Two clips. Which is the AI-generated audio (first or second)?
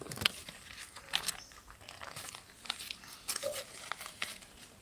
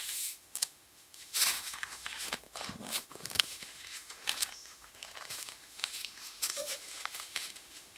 second